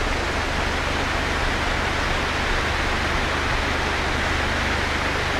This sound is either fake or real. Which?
real